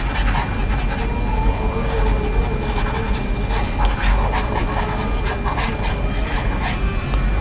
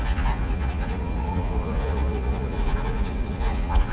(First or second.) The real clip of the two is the first